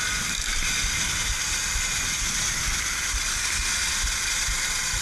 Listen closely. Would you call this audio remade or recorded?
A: recorded